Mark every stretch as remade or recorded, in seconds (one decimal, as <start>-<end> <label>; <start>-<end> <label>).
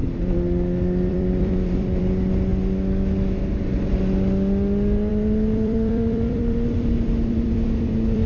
0.0-1.1 recorded; 1.1-2.5 remade; 2.5-5.1 recorded; 5.1-8.3 remade